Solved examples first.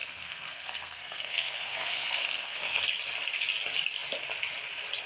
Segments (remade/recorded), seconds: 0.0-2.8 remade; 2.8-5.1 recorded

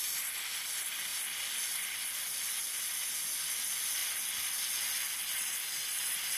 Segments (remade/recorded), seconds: 0.0-6.4 recorded

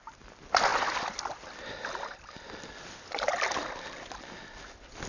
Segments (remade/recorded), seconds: 0.0-5.1 recorded

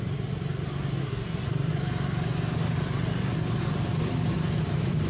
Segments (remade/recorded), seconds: 0.0-1.0 recorded; 1.0-1.7 remade; 1.7-5.1 recorded

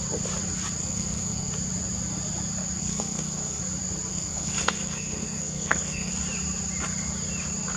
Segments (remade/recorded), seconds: 0.0-0.8 recorded; 0.8-1.5 remade; 1.5-2.8 recorded; 2.8-3.6 remade; 3.6-4.1 recorded; 4.1-6.1 remade; 6.1-7.8 recorded